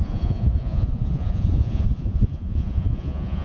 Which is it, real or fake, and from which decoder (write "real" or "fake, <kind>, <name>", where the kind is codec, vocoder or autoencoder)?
fake, vocoder, Vocos